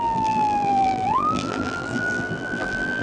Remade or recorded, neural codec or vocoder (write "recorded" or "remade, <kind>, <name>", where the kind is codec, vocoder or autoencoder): remade, vocoder, BigVGAN v2